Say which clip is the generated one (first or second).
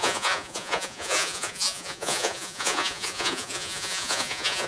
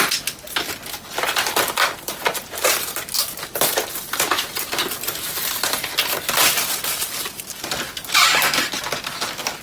first